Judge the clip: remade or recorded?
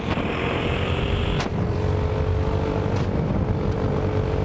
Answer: remade